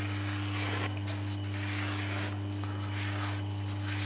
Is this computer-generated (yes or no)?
no